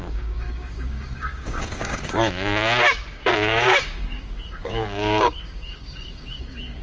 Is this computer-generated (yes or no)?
yes